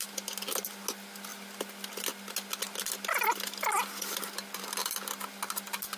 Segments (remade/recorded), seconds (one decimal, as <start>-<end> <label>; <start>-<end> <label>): 0.0-6.0 recorded